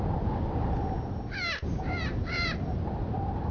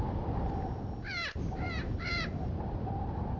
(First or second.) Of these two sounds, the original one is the first